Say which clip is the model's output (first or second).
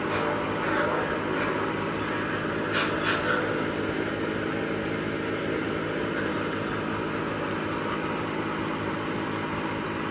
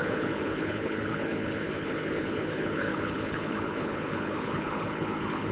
second